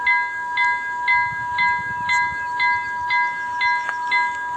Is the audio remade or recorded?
recorded